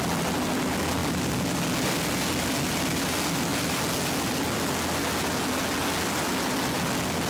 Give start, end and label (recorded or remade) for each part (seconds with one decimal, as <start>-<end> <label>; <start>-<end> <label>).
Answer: 0.0-7.3 recorded